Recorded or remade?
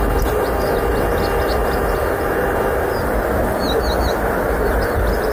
recorded